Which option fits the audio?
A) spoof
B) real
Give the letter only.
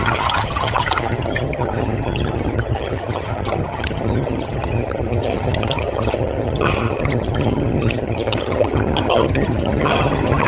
A